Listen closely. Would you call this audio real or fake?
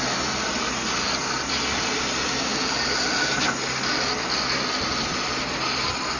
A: real